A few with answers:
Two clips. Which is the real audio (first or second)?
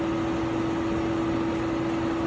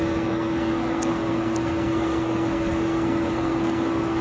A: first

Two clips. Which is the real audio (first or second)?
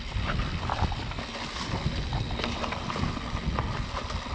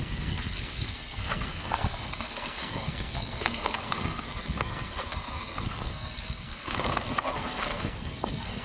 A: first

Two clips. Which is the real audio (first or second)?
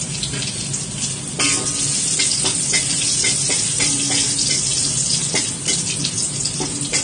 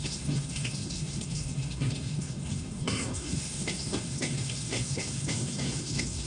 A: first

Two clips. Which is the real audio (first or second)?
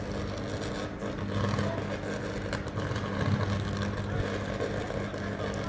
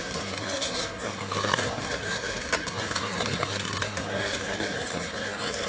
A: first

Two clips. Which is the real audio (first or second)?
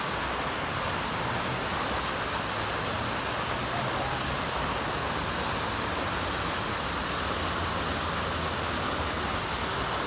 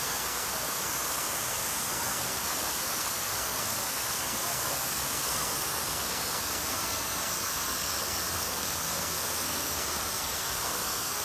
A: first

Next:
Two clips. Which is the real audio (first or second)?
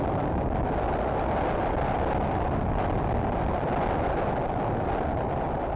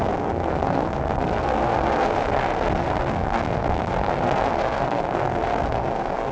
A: first